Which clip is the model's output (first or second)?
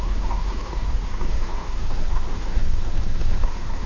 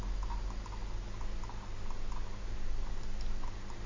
first